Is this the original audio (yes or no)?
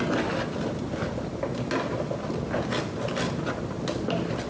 yes